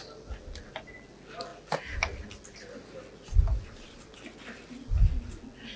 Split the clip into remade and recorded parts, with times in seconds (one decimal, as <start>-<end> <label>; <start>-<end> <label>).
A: 0.0-5.8 recorded